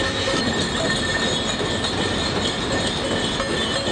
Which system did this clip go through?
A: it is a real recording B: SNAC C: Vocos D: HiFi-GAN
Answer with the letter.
A